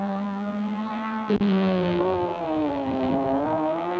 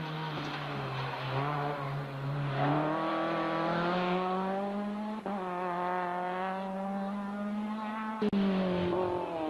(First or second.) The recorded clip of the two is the second